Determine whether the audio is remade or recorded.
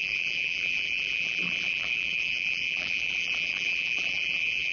remade